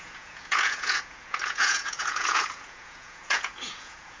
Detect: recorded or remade remade